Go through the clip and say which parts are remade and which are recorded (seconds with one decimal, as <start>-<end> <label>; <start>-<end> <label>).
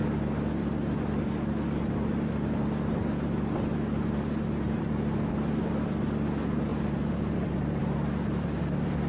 0.0-9.1 recorded